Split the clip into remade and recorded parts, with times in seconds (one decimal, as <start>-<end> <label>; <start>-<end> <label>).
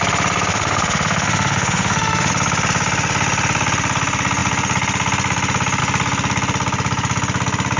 0.0-0.5 recorded; 0.5-2.3 remade; 2.3-7.8 recorded